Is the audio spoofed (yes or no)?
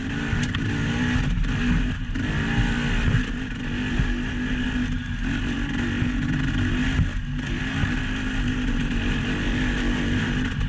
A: no